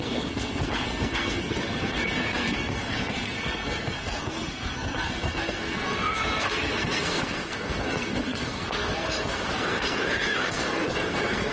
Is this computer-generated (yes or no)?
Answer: yes